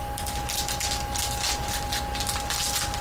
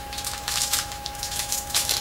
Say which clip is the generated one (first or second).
second